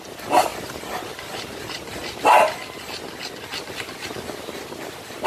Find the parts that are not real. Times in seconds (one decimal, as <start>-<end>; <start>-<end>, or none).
none